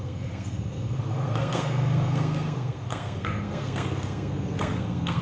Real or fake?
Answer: fake